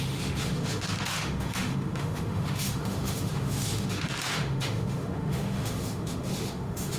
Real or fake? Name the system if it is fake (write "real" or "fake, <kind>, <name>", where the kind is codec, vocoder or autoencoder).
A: fake, autoencoder, DAC-VAE